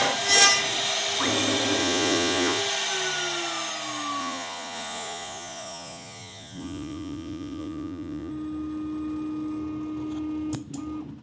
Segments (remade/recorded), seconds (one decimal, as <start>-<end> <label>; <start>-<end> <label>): 0.0-1.8 recorded; 1.8-2.6 remade; 2.6-4.2 recorded; 4.2-8.3 remade; 8.3-11.2 recorded